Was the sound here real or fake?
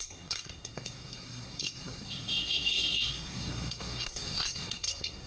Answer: fake